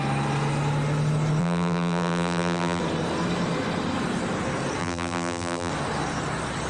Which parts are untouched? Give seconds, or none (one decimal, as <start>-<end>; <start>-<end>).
0.0-1.4; 2.8-4.8; 5.7-6.7